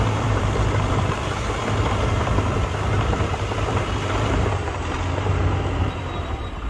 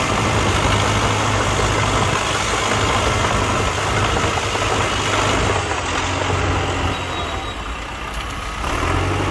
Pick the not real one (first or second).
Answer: first